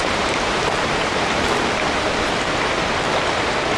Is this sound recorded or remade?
recorded